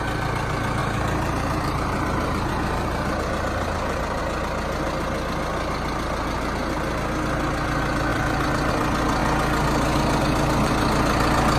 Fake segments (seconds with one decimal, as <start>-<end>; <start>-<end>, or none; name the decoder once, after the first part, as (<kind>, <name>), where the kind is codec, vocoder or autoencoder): 0.8-4.2 (vocoder, BigVGAN v2); 8.1-8.7

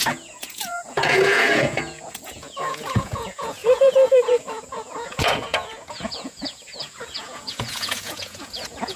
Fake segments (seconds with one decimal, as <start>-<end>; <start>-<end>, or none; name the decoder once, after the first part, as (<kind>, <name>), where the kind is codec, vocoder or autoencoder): 0.0-9.0 (vocoder, Vocos)

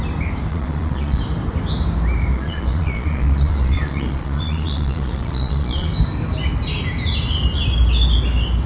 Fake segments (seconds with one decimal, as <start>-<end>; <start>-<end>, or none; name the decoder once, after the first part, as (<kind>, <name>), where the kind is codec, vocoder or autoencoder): 0.5-1.2 (vocoder, Vocos); 2.3-5.9

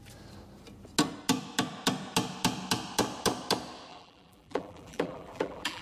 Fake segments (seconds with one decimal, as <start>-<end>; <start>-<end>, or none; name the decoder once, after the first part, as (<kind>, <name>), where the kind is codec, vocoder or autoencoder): 3.9-5.8 (vocoder, BigVGAN v2)

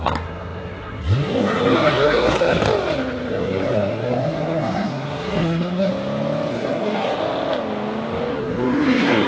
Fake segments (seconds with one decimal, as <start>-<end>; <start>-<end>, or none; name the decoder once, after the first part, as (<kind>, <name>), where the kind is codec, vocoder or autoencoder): 0.0-2.6 (codec, SNAC); 3.3-5.9; 6.5-7.2; 8.3-9.3